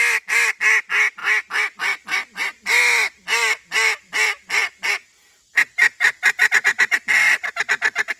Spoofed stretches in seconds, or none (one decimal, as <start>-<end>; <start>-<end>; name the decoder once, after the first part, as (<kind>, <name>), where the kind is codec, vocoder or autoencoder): none